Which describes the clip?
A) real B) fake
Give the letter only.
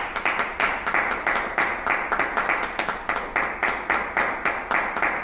A